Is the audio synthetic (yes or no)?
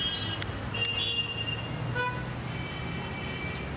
no